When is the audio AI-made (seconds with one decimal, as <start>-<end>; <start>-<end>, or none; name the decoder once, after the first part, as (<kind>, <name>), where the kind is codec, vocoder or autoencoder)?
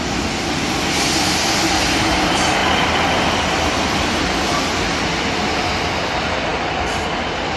none